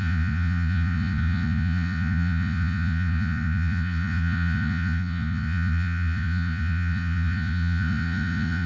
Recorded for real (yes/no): no